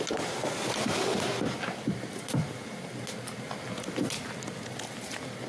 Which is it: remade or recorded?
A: recorded